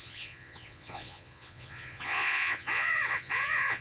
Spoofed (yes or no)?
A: yes